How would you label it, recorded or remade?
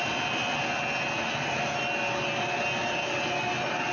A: recorded